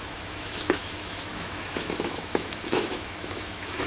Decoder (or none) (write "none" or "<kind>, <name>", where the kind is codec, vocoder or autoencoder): autoencoder, DAC-VAE